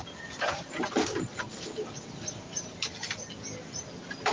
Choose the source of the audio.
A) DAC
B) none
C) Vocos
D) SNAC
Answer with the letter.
B